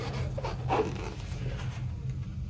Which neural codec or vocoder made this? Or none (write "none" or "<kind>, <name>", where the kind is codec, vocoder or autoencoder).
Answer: none